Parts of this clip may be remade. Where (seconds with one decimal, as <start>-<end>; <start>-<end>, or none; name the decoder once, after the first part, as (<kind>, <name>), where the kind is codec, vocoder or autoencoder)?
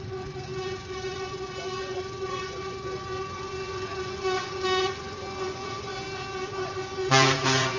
0.0-5.9 (vocoder, Vocos); 6.7-7.8